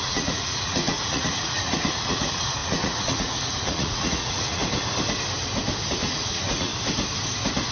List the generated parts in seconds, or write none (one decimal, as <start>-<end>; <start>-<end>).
0.0-4.6; 5.9-6.7